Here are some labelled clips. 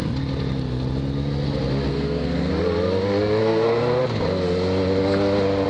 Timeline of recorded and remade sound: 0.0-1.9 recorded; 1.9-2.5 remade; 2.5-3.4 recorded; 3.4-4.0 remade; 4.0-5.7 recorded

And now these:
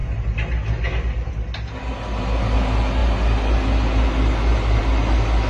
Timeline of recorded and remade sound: 0.0-5.5 recorded

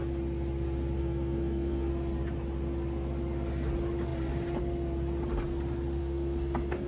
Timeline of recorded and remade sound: 0.0-1.0 recorded; 1.0-1.9 remade; 1.9-6.0 recorded; 6.0-6.9 remade

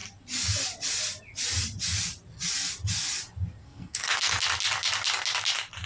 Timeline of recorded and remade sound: 0.0-3.6 recorded; 3.6-4.4 remade; 4.4-5.9 recorded

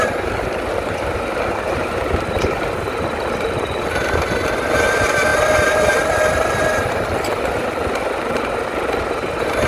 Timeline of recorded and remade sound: 0.0-9.7 recorded

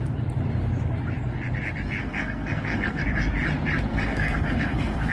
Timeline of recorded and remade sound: 0.0-2.0 recorded; 2.0-3.0 remade; 3.0-3.9 recorded; 3.9-5.1 remade